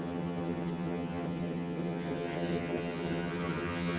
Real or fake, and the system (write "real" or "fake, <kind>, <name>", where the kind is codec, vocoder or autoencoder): fake, vocoder, HiFi-GAN